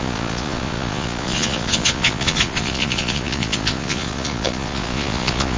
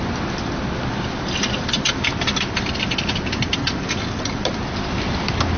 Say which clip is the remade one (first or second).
first